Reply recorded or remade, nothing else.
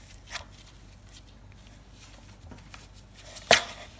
recorded